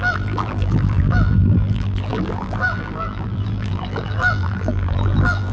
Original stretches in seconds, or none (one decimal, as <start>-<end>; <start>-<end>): none